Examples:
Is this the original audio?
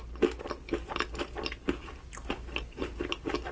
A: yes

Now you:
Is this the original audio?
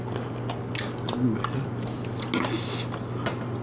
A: yes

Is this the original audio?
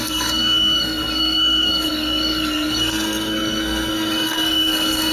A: no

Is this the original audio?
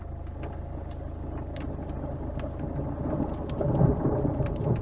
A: yes